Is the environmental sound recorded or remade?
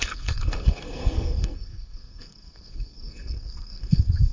remade